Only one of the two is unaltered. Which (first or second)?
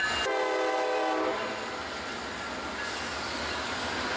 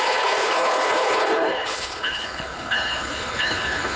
first